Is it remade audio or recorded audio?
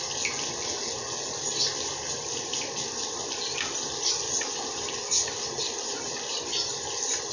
recorded